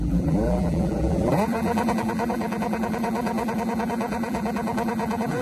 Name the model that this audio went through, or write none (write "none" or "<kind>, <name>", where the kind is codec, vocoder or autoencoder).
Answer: vocoder, BigVGAN v2